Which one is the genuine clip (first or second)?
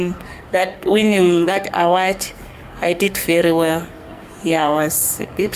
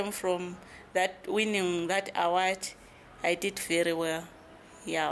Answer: second